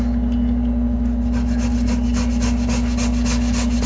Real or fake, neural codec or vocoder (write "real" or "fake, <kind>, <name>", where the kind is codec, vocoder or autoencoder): real